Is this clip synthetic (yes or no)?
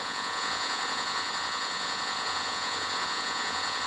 yes